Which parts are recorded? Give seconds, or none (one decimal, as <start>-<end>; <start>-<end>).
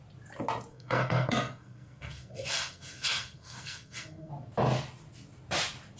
0.0-0.7; 4.3-6.0